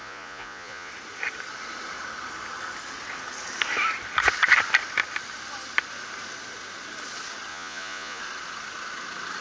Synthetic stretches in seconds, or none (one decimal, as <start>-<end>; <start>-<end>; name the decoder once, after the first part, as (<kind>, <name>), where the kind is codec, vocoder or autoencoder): 0.0-0.9 (vocoder, Vocos); 7.5-8.2